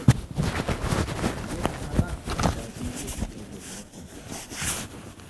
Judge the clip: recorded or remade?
recorded